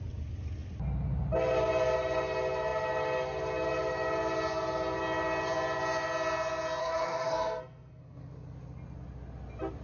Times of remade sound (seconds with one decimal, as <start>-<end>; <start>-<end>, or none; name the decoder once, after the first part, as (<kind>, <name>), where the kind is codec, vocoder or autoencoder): 6.8-8.0 (codec, SNAC)